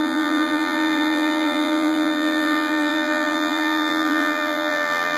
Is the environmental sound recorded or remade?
remade